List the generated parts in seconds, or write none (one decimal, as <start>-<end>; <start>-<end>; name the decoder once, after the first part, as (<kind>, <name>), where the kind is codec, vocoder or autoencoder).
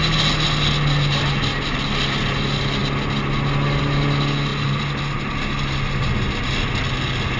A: none